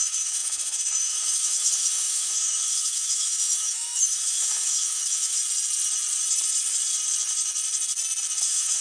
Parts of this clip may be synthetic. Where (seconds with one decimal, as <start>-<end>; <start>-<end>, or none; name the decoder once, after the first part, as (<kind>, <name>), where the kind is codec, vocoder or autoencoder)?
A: 0.0-5.4 (autoencoder, DAC-VAE); 8.4-8.8